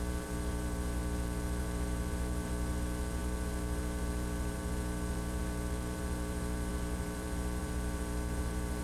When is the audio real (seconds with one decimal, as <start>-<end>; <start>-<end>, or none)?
none